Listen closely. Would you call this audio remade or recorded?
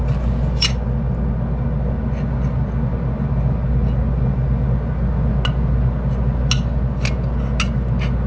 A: recorded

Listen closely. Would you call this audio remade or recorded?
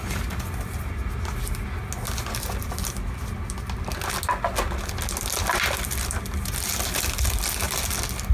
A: recorded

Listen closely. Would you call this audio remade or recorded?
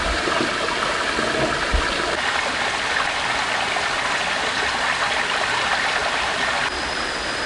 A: recorded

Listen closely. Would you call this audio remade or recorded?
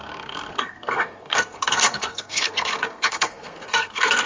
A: remade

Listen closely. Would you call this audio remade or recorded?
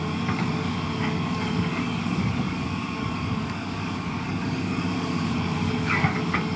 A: remade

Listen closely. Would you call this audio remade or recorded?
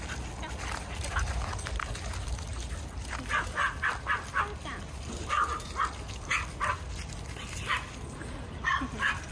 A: recorded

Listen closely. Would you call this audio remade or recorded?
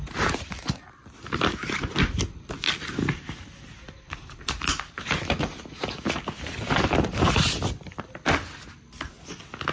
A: recorded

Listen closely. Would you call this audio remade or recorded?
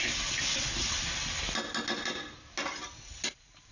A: recorded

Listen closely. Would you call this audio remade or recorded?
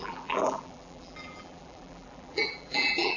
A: remade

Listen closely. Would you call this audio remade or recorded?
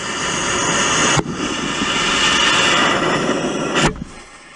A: recorded